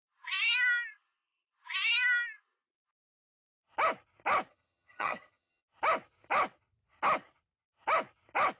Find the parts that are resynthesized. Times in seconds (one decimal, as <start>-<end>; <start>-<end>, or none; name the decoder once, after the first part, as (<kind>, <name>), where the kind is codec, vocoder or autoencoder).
4.5-5.6 (vocoder, HiFi-GAN)